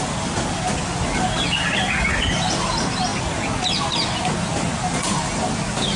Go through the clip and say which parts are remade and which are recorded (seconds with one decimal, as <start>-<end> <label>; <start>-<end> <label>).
0.0-6.0 recorded

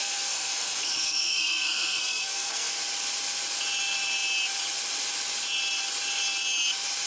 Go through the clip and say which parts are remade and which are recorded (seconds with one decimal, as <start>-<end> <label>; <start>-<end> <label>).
0.0-2.7 remade; 2.7-7.1 recorded

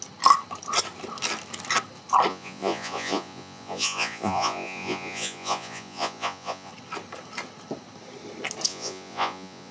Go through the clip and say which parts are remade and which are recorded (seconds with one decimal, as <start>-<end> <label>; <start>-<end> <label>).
0.0-2.3 recorded; 2.3-6.7 remade; 6.7-8.7 recorded; 8.7-9.7 remade

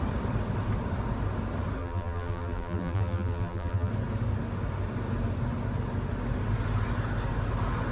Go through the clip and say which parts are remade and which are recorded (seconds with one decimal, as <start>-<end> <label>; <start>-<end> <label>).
0.0-1.8 recorded; 1.8-3.9 remade; 3.9-7.9 recorded

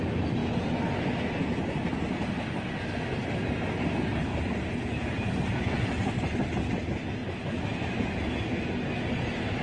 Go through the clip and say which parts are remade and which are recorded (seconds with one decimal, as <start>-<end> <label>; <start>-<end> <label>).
0.0-9.6 recorded